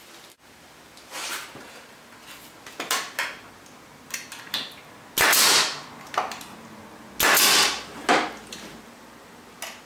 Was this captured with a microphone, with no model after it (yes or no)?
yes